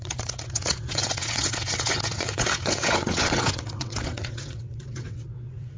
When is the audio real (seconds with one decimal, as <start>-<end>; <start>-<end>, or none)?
none